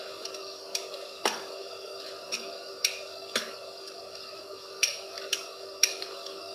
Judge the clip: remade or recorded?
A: remade